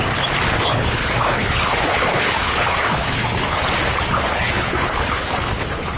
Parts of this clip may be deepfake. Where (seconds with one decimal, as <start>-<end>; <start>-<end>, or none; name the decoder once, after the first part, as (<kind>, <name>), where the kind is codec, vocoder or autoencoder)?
0.5-3.6 (codec, HILCodec); 4.1-6.0